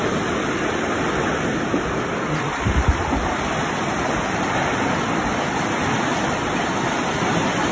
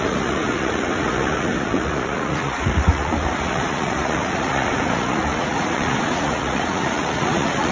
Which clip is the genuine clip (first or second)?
first